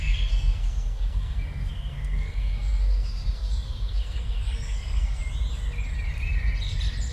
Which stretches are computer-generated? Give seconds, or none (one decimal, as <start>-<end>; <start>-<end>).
0.0-5.2